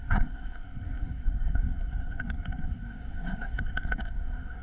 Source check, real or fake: fake